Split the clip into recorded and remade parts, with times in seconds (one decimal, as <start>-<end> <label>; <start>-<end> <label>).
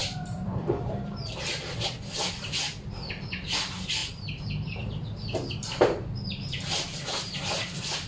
0.0-1.2 remade; 1.2-4.0 recorded; 4.0-4.8 remade; 4.8-8.1 recorded